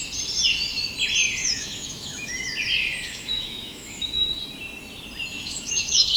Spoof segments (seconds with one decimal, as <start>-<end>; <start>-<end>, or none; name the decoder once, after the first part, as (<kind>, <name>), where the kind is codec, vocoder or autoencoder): 1.4-2.3 (autoencoder, DAC-VAE); 3.0-4.4; 5.3-6.2